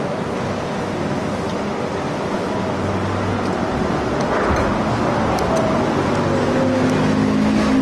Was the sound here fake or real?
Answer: real